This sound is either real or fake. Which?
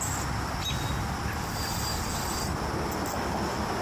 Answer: real